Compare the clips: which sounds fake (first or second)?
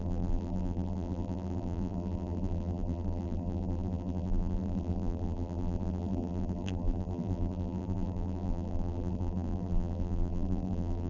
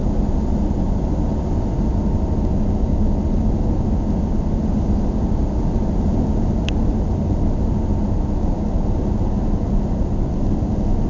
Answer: first